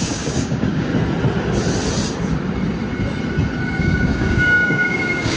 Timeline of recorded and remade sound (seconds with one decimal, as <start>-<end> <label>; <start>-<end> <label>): 0.0-0.9 remade; 0.9-3.8 recorded; 3.8-5.4 remade